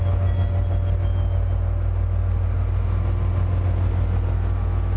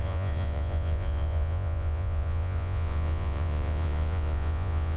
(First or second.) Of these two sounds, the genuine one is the first